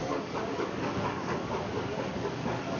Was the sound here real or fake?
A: fake